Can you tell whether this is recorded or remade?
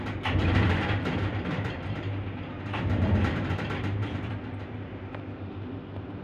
remade